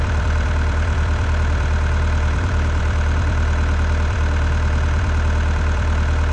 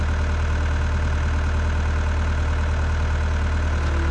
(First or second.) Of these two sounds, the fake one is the first